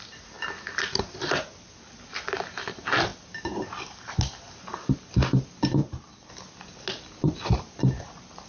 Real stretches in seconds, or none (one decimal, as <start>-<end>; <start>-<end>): 0.0-8.5